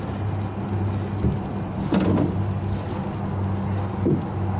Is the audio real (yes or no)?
yes